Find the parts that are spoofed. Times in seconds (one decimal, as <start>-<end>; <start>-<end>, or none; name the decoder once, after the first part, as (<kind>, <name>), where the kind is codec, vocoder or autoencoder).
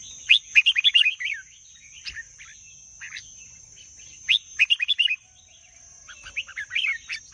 none